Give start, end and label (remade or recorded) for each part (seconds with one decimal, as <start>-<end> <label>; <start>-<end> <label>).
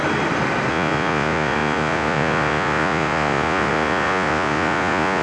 0.0-0.7 recorded; 0.7-5.2 remade